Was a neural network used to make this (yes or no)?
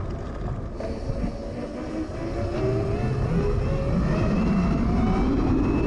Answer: no